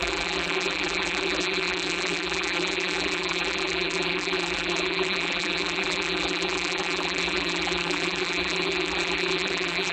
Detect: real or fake fake